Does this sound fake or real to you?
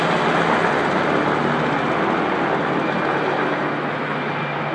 real